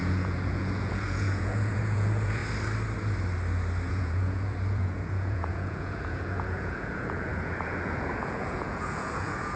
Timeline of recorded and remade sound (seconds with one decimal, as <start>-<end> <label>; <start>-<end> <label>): 0.0-2.4 remade; 2.4-3.9 recorded; 3.9-9.6 remade